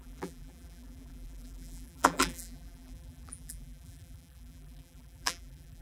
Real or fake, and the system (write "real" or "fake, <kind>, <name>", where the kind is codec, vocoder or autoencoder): fake, vocoder, BigVGAN v2